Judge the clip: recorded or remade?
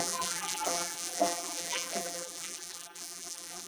remade